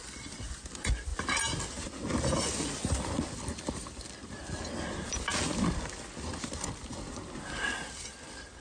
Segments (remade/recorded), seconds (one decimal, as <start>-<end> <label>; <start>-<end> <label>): 0.0-8.6 recorded